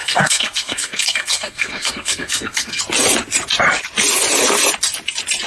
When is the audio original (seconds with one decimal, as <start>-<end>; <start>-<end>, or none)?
2.8-5.5